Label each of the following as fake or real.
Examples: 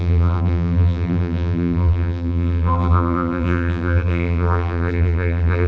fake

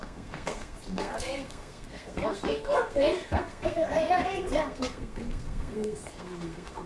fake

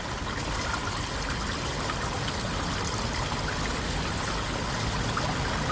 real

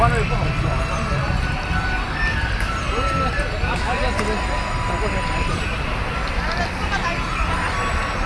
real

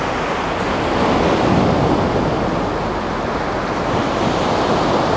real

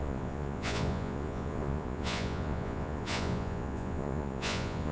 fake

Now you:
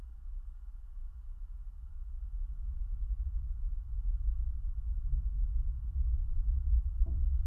real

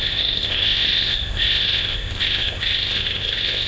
fake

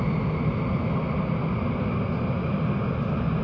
real